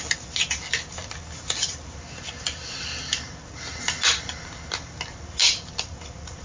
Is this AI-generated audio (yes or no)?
no